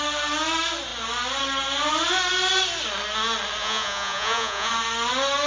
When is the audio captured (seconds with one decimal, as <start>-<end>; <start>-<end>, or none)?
0.0-3.6; 4.7-5.5

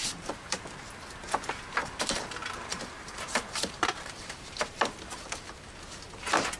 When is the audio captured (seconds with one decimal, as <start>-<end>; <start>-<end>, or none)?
0.8-1.8; 5.8-6.6

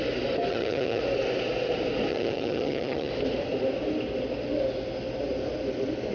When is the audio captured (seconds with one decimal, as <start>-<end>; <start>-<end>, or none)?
0.0-0.5; 1.0-2.1; 3.1-6.1

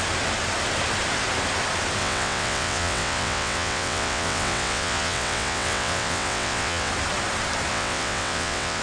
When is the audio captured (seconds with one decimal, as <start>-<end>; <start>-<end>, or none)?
0.0-2.0; 6.9-7.7

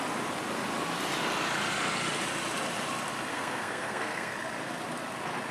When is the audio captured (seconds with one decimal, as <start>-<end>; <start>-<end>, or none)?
0.0-3.3; 4.3-5.5

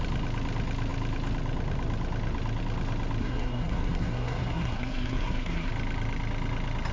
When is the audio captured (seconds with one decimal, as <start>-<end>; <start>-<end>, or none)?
0.0-3.2; 5.7-6.9

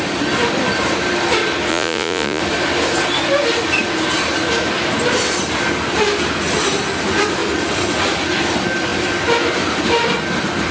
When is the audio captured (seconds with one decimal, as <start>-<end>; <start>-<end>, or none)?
0.0-1.7; 2.4-10.7

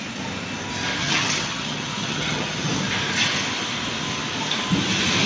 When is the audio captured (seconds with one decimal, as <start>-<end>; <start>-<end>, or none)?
0.0-1.0; 2.7-5.3